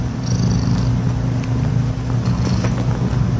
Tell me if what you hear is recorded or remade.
recorded